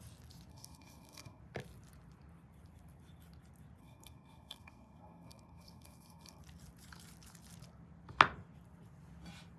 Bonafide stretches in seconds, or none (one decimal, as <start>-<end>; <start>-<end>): 0.0-0.5; 1.4-3.8; 6.4-9.6